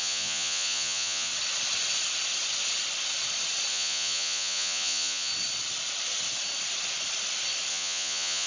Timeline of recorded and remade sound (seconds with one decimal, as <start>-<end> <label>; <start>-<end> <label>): 0.0-1.3 remade; 1.3-3.7 recorded; 3.7-5.3 remade; 5.3-7.7 recorded; 7.7-8.5 remade